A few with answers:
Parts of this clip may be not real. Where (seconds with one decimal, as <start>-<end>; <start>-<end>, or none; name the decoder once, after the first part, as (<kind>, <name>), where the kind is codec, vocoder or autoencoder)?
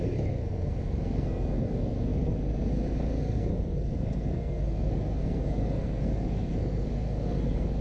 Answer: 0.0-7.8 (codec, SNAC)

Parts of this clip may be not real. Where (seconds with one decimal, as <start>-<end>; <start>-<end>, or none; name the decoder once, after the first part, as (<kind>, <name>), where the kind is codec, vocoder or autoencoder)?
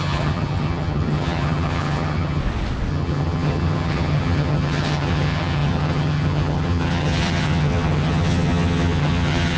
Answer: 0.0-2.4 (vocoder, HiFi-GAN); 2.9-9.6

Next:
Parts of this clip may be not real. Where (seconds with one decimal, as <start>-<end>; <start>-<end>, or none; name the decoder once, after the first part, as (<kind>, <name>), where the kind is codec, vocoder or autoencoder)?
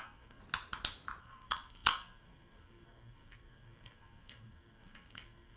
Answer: 0.0-0.4 (codec, SNAC); 1.2-5.6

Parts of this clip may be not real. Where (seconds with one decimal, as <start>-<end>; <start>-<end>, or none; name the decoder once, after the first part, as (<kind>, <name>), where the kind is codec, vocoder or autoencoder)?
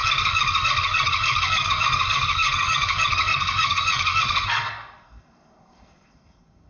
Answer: 0.0-6.7 (codec, SNAC)